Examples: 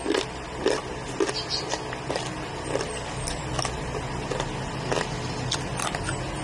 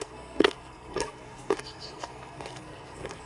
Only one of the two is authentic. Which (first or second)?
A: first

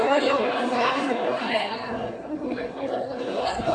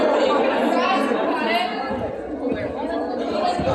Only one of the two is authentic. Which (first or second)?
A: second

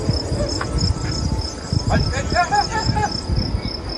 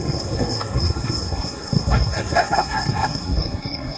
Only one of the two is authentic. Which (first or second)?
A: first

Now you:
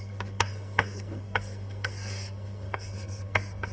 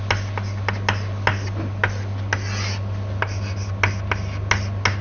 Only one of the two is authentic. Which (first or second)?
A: second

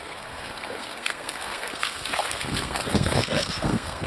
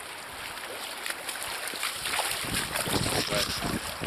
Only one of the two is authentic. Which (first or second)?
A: second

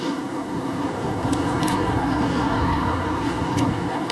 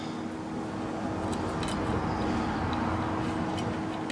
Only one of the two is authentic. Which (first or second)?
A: second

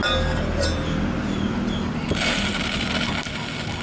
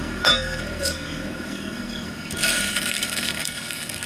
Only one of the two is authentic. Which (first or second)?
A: first